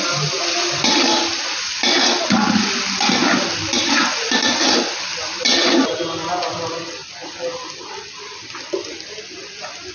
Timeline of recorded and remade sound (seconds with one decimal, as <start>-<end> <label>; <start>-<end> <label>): 0.0-9.9 recorded